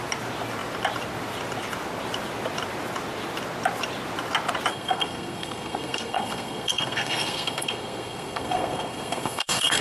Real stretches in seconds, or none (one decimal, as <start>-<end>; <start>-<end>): 0.0-4.7